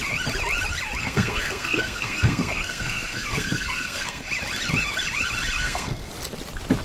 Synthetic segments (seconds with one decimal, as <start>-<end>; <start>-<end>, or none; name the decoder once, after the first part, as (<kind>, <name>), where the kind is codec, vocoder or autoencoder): 1.0-4.2 (codec, SNAC); 5.6-6.1

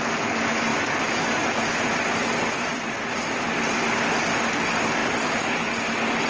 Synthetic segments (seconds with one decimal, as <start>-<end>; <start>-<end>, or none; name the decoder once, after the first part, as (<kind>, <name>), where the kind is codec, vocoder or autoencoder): 0.7-4.5 (vocoder, BigVGAN v2); 5.0-6.3

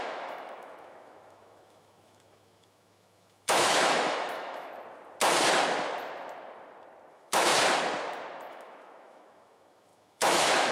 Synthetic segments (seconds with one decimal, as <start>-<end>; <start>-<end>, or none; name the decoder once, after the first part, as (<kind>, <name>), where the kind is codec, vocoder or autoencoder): 0.0-4.7 (autoencoder, DAC-VAE); 7.1-7.5; 8.5-10.7